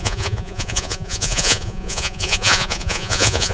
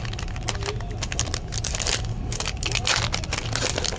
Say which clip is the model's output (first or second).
first